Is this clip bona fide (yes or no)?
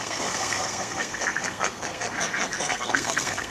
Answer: no